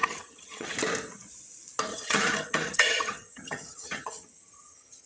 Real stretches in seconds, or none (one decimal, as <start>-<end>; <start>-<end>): 0.7-1.9